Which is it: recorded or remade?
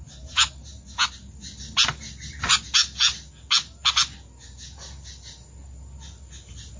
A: recorded